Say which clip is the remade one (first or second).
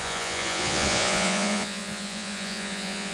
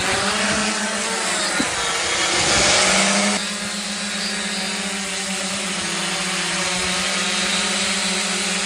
first